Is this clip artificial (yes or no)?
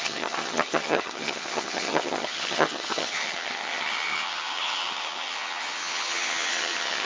yes